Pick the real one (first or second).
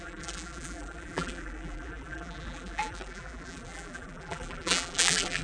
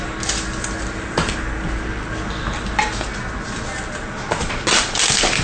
second